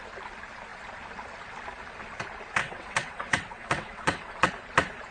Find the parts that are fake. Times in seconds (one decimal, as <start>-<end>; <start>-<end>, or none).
2.6-4.5